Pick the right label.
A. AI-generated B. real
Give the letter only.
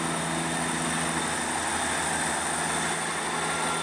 B